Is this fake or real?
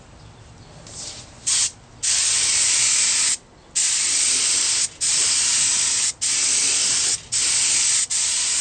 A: real